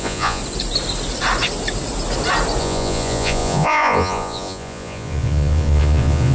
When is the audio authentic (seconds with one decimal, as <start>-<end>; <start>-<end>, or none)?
0.4-2.6